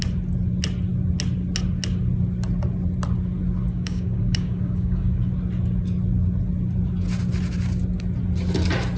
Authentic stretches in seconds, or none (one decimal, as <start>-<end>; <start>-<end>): 0.0-3.7; 5.3-9.0